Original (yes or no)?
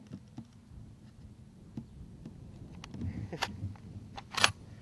yes